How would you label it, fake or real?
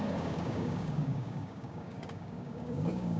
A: fake